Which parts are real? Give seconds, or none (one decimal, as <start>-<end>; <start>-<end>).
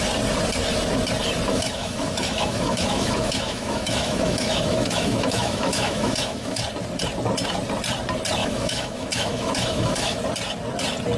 0.0-1.5; 6.6-8.4; 10.2-11.2